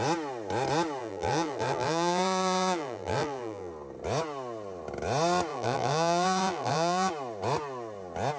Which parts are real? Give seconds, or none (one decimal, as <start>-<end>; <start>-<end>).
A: 0.0-1.0; 3.7-5.5; 7.1-8.4